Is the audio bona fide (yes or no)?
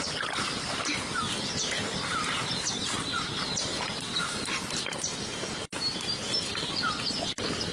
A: yes